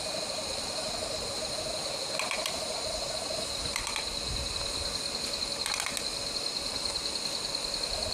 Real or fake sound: real